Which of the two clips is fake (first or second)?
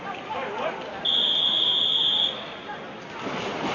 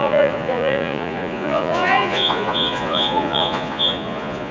second